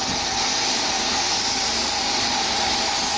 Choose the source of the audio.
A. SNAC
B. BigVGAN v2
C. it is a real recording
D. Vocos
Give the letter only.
C